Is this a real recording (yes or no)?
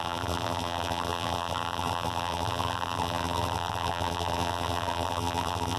no